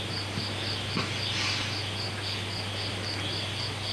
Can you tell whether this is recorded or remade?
recorded